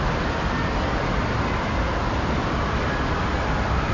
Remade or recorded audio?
recorded